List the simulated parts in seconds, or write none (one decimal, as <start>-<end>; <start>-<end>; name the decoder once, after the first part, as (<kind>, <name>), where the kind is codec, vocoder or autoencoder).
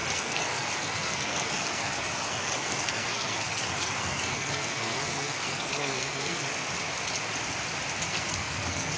0.0-6.5 (codec, SNAC); 8.1-9.0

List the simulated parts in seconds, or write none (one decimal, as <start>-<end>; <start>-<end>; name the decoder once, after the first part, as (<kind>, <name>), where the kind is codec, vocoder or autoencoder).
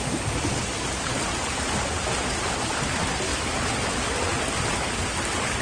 none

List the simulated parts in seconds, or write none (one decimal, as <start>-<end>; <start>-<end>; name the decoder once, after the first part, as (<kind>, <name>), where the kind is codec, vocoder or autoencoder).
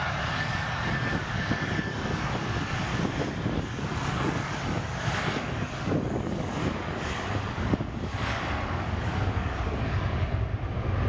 0.0-2.9 (codec, DAC); 3.6-10.5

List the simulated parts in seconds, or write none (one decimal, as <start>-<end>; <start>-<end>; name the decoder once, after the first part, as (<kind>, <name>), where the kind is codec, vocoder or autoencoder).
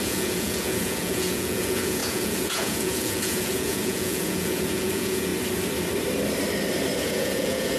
0.0-5.3 (vocoder, Vocos); 7.0-7.8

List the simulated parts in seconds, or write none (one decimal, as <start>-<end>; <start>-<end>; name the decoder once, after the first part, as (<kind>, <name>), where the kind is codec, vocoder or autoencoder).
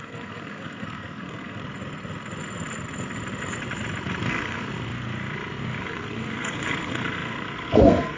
0.0-1.6 (codec, SNAC); 4.3-4.7; 5.8-8.2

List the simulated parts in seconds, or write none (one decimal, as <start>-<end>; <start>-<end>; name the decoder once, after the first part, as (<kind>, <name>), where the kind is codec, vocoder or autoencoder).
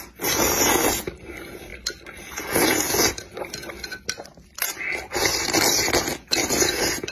none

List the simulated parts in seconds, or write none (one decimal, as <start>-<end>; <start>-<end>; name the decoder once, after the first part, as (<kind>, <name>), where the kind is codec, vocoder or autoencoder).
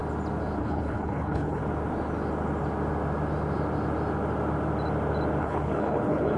0.6-1.6 (codec, HILCodec); 5.4-6.4